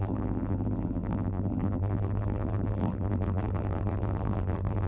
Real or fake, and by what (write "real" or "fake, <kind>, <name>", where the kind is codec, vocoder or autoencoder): fake, vocoder, BigVGAN v2